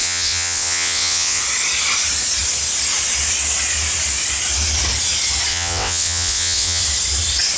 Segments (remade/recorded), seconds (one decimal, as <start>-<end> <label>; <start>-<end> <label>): 0.0-1.4 remade; 1.4-5.5 recorded; 5.5-6.8 remade; 6.8-7.6 recorded